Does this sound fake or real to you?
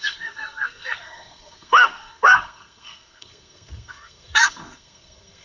fake